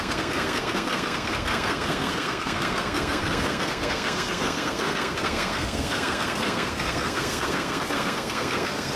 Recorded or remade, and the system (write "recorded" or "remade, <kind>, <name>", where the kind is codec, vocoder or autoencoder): remade, codec, SNAC